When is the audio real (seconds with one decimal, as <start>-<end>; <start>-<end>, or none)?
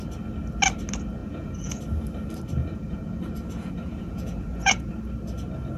0.0-1.2; 1.8-2.6; 3.2-3.6; 4.9-5.8